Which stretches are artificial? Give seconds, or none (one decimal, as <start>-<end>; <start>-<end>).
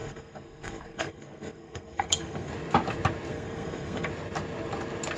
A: 0.0-2.5; 3.3-4.1